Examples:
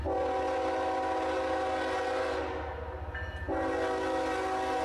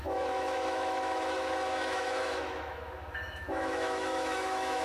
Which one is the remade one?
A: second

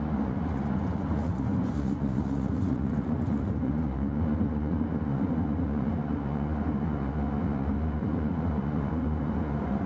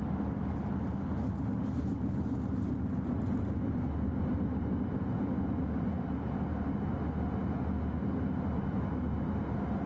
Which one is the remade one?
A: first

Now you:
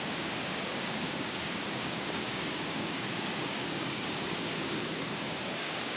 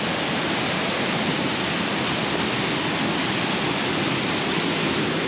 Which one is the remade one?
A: first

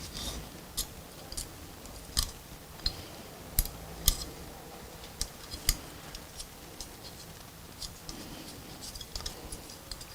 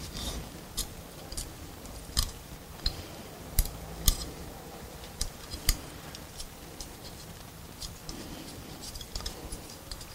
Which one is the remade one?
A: second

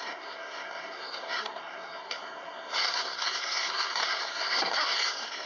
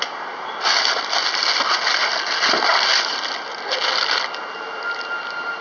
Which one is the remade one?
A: first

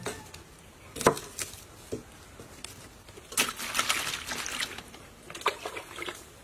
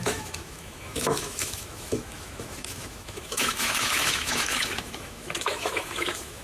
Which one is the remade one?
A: second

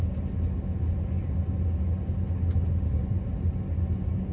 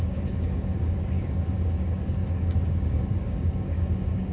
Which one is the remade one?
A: second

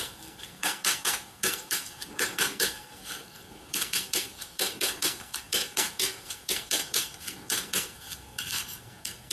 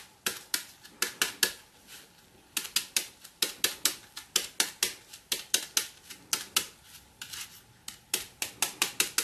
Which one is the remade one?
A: first